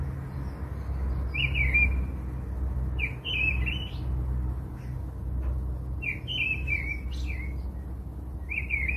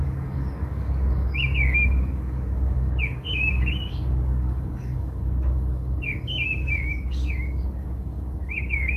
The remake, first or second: second